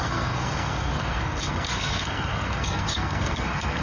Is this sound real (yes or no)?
no